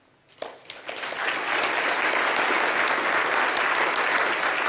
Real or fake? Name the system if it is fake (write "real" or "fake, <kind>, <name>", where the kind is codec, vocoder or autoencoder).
real